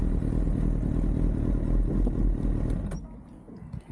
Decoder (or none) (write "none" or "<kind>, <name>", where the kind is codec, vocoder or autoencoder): none